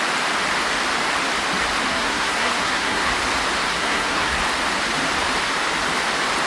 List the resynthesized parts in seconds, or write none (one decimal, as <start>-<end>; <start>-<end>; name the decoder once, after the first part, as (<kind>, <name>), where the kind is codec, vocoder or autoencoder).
1.9-3.1 (codec, SNAC); 3.7-4.4